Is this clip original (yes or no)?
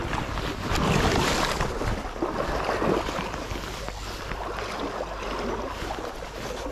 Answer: yes